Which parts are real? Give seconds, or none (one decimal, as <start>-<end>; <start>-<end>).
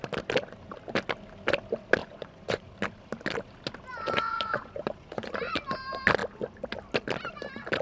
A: 0.0-2.0; 2.7-3.9; 5.4-7.8